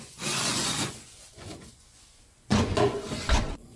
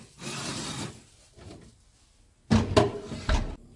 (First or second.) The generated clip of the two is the first